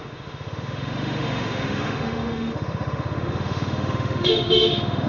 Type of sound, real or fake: fake